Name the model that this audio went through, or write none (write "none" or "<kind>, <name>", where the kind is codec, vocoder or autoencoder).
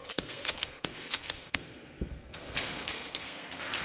codec, SNAC